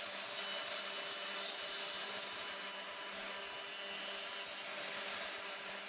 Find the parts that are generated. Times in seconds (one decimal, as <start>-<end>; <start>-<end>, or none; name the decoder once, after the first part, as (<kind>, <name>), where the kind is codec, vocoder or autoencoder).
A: 2.0-3.1 (vocoder, BigVGAN v2)